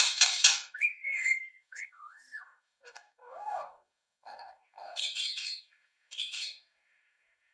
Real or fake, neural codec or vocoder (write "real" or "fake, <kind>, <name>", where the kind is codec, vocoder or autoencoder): fake, codec, DAC